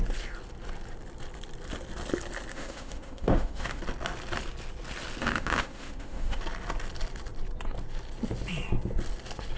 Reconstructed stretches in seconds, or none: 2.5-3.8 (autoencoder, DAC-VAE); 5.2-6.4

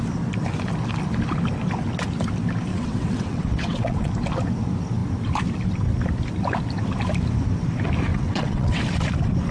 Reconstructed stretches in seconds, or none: 2.7-4.1 (vocoder, WaveNeXt); 8.1-8.8

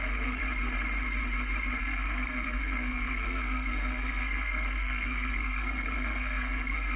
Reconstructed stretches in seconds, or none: 0.0-0.4 (codec, SNAC); 1.8-7.0